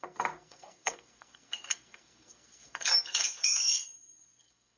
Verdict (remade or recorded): remade